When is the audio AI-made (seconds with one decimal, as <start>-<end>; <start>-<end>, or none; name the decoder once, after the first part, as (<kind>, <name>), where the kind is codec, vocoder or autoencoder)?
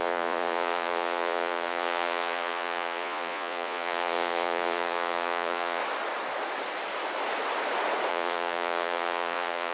0.0-5.8 (vocoder, Vocos); 8.1-9.7